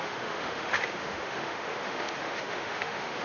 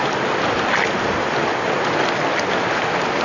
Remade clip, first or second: first